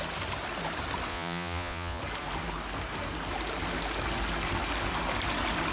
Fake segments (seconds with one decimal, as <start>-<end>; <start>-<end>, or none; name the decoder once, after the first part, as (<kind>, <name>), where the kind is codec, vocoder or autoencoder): 1.1-2.0 (vocoder, Vocos)